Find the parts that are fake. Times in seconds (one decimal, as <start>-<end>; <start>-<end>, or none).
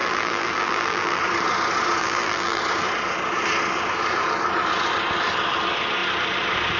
0.0-1.2; 2.0-2.6